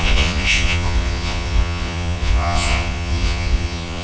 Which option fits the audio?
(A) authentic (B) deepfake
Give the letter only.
B